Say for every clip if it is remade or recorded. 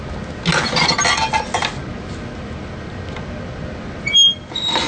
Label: recorded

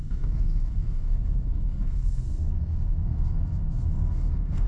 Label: remade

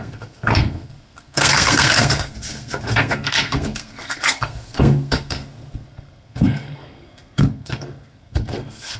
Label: remade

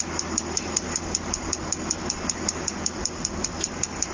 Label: recorded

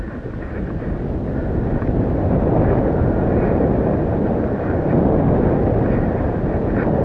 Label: recorded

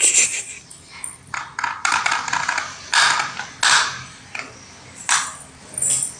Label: recorded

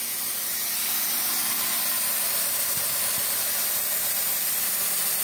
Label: recorded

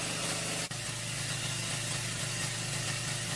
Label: recorded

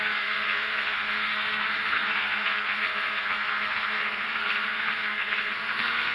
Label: remade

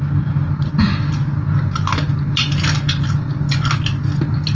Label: recorded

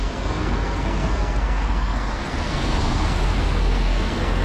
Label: remade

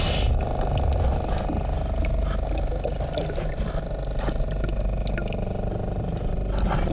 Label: recorded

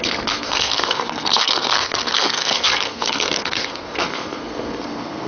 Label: remade